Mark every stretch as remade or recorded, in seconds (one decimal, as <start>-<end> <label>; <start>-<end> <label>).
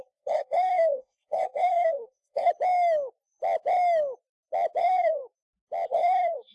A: 0.0-2.5 remade; 2.5-4.8 recorded; 4.8-5.2 remade; 5.2-5.9 recorded; 5.9-6.5 remade